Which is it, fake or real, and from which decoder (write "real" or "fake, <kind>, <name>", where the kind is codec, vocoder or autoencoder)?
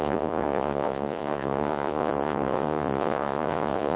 fake, vocoder, Vocos